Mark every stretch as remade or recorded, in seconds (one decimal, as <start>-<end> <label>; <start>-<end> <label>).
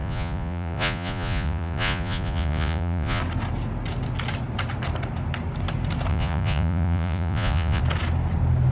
0.0-3.2 remade; 3.2-6.1 recorded; 6.1-7.8 remade; 7.8-8.7 recorded